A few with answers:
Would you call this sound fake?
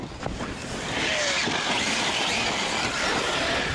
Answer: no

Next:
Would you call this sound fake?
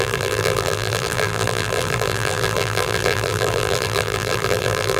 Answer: yes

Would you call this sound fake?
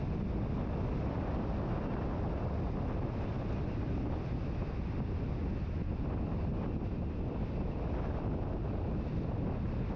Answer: no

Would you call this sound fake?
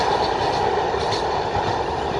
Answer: yes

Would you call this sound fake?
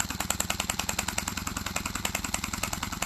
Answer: no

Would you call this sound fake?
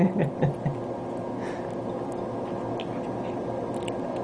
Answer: no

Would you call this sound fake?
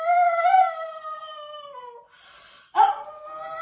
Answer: no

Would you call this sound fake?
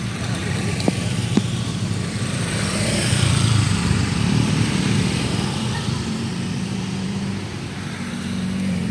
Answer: yes